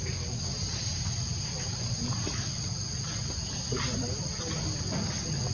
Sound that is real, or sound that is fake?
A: real